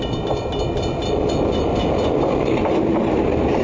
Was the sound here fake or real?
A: real